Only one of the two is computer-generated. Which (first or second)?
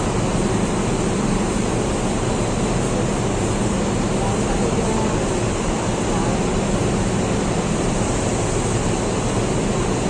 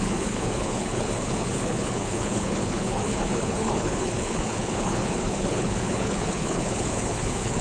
second